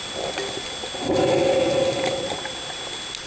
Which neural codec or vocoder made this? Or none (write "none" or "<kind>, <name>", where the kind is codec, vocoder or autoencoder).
none